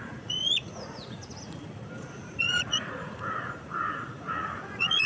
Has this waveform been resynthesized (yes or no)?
yes